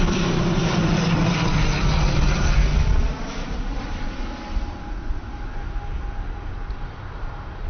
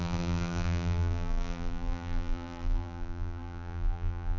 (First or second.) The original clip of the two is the first